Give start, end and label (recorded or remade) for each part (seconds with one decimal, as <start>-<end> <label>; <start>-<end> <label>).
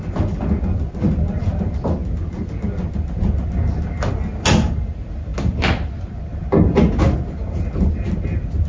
0.0-8.7 recorded